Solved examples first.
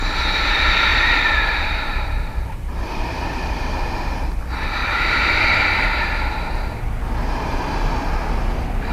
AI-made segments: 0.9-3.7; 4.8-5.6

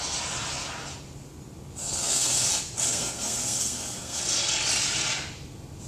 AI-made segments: 1.8-2.4; 2.9-4.2

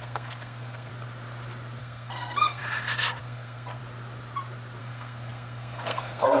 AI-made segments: 0.0-0.9; 1.8-2.6; 3.2-3.8; 4.8-6.4

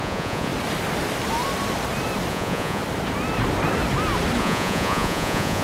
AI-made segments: 0.0-0.5; 2.3-2.8; 4.4-5.6

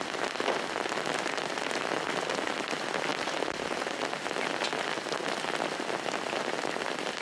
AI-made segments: 0.0-1.5; 2.3-3.1; 5.4-7.2

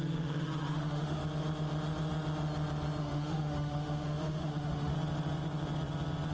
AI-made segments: 0.0-1.2; 3.0-4.9

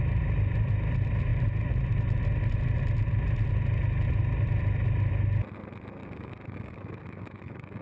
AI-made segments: 6.0-7.8

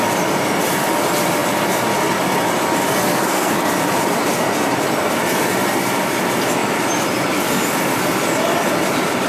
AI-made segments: 3.1-3.6